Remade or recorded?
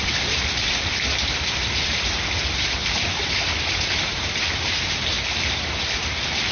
remade